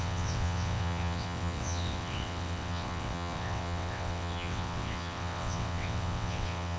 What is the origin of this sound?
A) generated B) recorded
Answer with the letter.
A